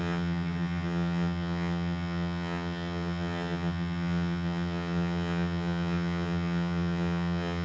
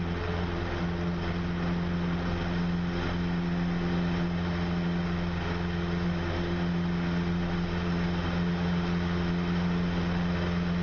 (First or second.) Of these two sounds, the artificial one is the first